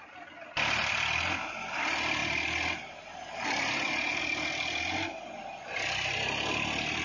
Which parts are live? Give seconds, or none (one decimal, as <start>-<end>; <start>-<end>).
0.0-7.0